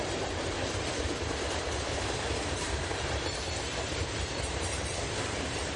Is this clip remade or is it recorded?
remade